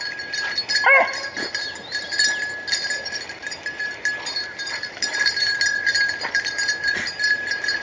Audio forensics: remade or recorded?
recorded